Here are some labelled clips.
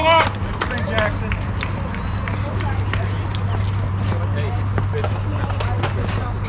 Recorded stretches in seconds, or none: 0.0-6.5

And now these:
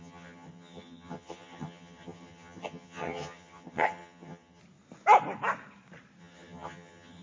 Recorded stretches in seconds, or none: 4.6-6.2